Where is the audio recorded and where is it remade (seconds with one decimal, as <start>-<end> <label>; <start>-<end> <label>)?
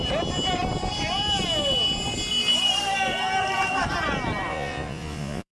0.0-4.5 recorded; 4.5-5.5 remade